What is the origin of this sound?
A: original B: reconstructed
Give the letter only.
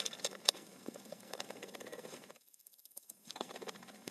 B